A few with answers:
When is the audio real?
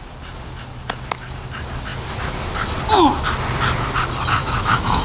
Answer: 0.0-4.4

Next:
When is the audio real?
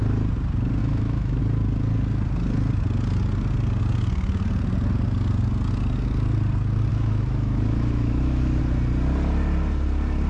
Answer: 0.0-0.8; 1.4-6.9; 8.6-10.3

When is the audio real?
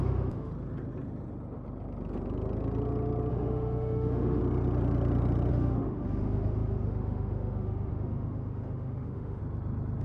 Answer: 0.5-3.3; 4.4-5.5; 9.4-10.0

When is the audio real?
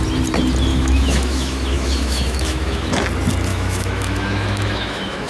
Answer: 0.0-0.7; 2.9-3.5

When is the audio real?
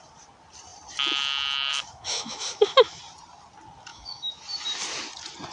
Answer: 0.0-1.7; 3.0-3.9; 4.4-5.5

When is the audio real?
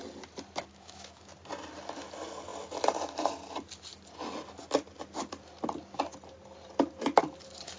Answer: 0.0-0.7; 1.3-7.8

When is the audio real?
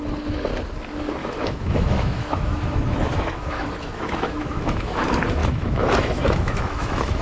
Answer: 0.0-1.2; 5.0-5.4